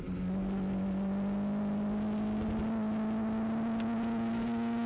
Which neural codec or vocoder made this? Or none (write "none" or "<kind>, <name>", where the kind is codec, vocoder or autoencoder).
none